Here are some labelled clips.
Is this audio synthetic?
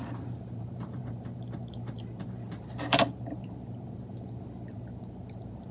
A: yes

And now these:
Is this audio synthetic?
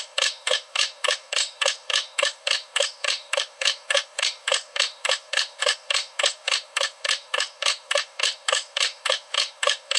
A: yes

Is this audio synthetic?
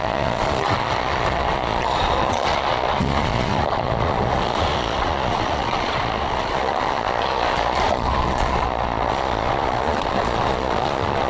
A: yes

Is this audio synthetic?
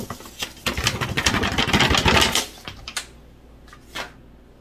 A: no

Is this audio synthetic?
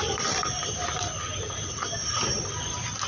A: no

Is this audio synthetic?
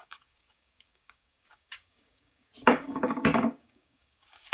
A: yes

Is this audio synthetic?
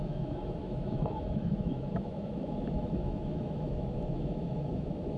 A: yes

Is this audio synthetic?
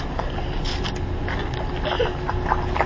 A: no